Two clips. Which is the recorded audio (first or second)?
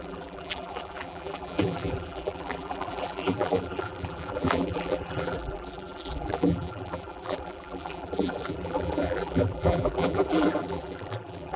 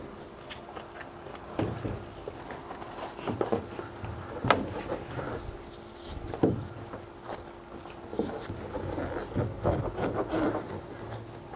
second